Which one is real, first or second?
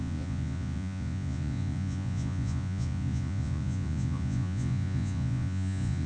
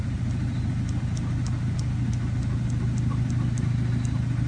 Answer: second